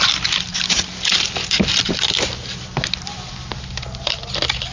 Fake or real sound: real